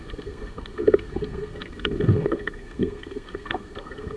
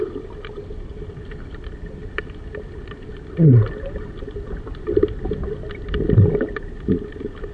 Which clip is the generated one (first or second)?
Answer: first